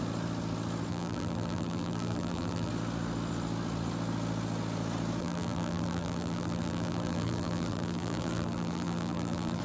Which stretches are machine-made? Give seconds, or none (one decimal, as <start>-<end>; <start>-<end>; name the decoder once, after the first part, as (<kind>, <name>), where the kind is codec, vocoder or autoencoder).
0.9-2.7 (vocoder, BigVGAN v2); 5.2-9.6